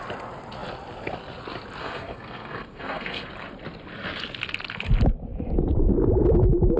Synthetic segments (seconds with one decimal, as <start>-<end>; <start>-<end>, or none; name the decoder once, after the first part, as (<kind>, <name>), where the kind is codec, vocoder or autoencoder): 1.8-3.3 (codec, SNAC)